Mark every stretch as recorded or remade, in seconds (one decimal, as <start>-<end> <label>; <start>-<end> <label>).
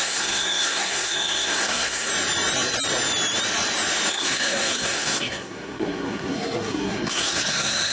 0.0-2.1 remade; 2.1-4.1 recorded; 4.1-7.9 remade